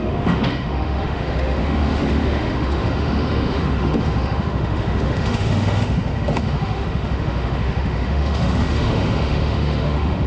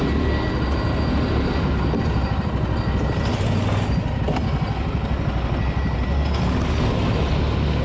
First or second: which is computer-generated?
first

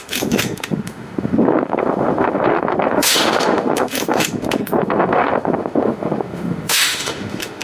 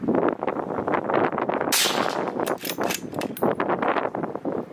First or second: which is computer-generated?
first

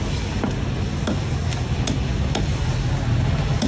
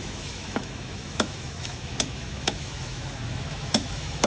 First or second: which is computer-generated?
second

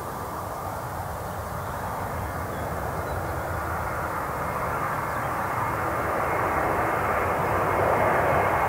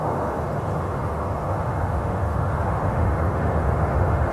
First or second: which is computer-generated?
second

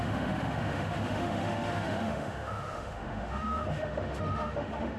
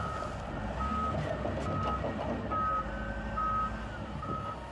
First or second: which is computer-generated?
first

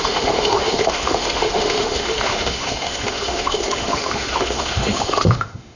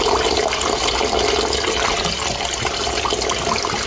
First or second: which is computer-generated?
first